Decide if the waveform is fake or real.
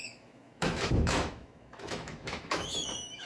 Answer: fake